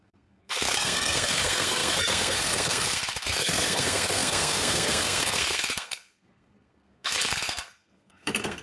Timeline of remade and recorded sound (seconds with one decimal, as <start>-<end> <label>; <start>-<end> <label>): 0.0-8.6 remade